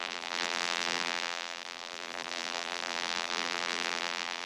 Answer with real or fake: fake